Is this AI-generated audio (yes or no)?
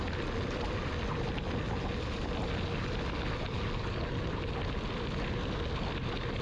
no